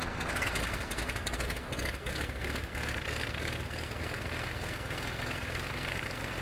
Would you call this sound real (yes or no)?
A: no